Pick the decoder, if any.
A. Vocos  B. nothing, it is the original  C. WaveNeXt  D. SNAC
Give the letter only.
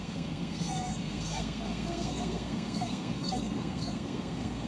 D